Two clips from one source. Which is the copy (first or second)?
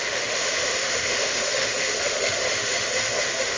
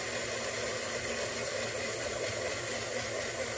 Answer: first